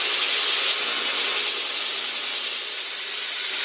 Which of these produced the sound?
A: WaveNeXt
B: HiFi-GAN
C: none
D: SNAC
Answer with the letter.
C